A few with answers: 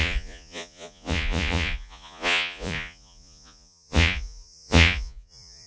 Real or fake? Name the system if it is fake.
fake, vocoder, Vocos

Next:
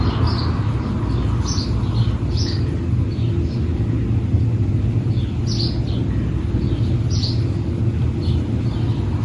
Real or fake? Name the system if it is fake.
real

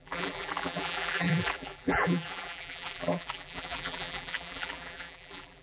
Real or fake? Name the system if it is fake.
fake, vocoder, BigVGAN v2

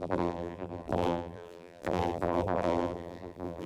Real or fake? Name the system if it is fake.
fake, vocoder, BigVGAN v2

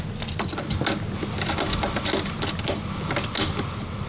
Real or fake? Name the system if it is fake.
real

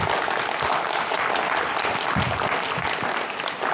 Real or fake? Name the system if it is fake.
real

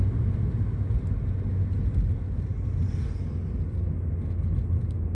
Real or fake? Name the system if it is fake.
real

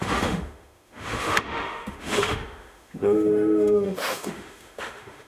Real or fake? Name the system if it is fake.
fake, autoencoder, DAC-VAE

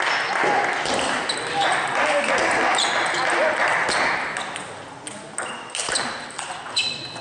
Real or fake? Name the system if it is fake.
real